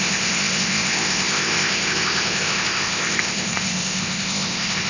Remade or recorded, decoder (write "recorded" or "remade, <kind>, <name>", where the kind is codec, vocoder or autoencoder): remade, codec, ZipCodec